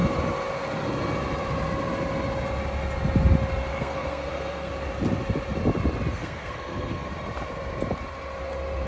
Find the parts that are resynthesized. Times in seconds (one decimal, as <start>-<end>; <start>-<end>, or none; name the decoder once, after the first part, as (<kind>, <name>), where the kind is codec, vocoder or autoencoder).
3.7-4.7 (codec, SNAC); 6.1-7.1